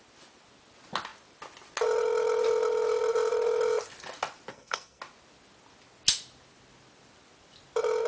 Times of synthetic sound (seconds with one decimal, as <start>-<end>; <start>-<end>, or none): 4.5-5.0